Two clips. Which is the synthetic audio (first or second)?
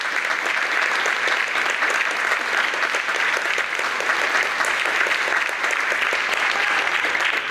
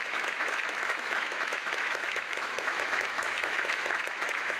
second